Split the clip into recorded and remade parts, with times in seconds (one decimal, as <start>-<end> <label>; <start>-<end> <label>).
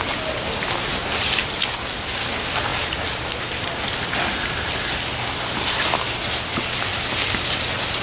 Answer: 0.0-8.0 recorded